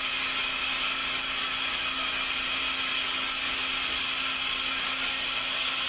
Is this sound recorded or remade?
recorded